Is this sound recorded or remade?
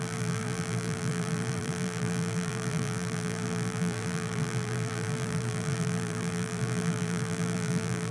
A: remade